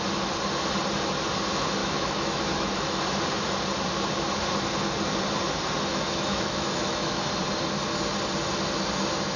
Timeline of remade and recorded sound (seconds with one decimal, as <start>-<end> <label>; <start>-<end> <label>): 0.0-1.8 recorded; 1.8-3.0 remade; 3.0-5.9 recorded; 5.9-7.3 remade; 7.3-9.4 recorded